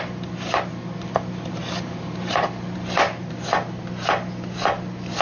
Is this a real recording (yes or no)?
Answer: yes